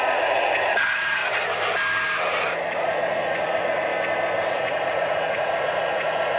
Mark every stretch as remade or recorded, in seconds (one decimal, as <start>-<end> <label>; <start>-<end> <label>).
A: 0.0-1.2 remade; 1.2-2.8 recorded; 2.8-3.9 remade; 3.9-4.5 recorded; 4.5-6.4 remade